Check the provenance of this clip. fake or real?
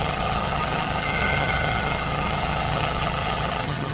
fake